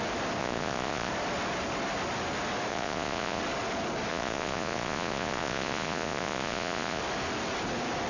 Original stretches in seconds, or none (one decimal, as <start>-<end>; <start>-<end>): 0.0-0.4; 1.1-2.7; 3.4-4.1; 7.0-8.1